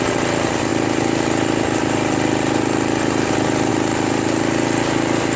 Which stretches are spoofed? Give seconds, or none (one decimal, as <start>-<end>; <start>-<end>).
none